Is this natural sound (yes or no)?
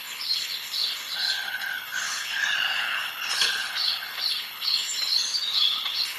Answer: no